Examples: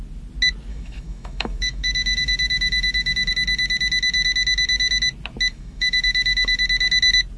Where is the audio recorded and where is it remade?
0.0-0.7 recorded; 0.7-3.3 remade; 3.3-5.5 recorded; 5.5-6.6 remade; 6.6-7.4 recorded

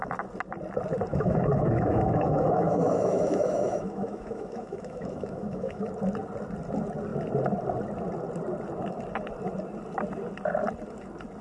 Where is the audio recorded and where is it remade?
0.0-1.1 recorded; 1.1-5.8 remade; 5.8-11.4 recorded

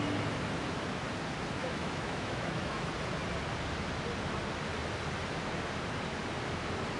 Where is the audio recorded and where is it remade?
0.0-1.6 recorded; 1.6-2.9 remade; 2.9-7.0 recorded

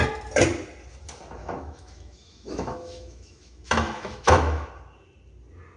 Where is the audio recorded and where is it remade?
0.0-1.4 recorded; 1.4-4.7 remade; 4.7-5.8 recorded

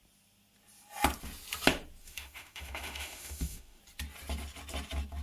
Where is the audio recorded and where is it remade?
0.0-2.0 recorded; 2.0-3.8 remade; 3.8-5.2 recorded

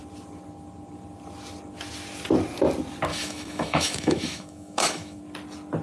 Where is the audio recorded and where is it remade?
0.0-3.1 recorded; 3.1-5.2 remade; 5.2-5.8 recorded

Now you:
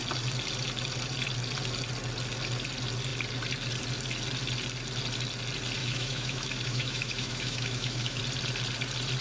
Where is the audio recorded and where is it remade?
0.0-5.8 recorded; 5.8-8.2 remade; 8.2-9.2 recorded